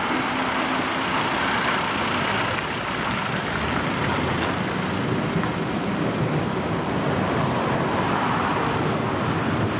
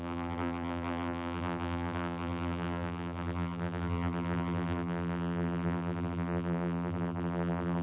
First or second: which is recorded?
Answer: first